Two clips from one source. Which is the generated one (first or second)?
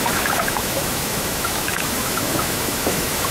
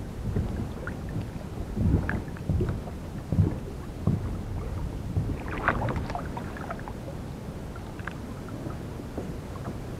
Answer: first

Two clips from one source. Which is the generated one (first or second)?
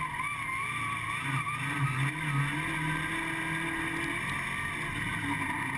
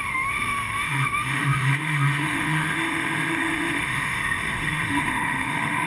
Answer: second